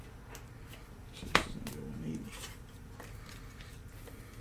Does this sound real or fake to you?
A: real